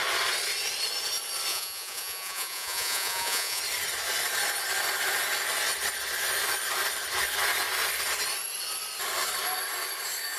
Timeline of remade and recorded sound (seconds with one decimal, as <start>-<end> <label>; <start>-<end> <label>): 0.0-1.5 recorded; 1.5-3.6 remade; 3.6-10.4 recorded